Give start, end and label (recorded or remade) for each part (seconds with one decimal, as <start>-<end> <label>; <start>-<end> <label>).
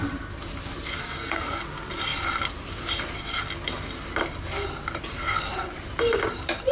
0.0-1.0 recorded; 1.0-1.6 remade; 1.6-6.7 recorded